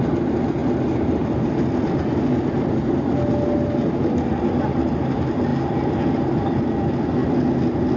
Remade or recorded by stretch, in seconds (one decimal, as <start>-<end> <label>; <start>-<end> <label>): 0.0-8.0 recorded